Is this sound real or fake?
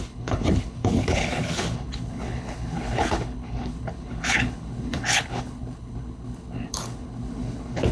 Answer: fake